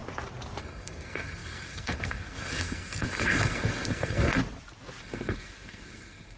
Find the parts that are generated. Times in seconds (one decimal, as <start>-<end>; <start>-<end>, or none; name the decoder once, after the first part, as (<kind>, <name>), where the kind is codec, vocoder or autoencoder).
0.6-4.4 (codec, SNAC); 5.0-6.4